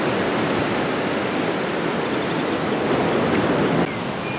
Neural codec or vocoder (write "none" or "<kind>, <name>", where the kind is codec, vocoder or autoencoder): none